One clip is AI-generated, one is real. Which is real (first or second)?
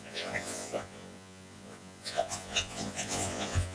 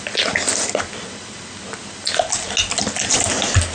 second